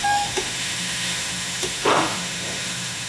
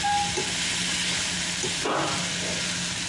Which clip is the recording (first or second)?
second